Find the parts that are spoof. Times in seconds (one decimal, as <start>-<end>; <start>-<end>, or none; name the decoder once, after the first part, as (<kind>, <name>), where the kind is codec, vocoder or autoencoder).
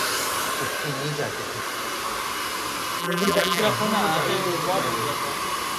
3.0-3.6 (vocoder, BigVGAN v2)